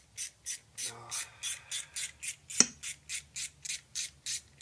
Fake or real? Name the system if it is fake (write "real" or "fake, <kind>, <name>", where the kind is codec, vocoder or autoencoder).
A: real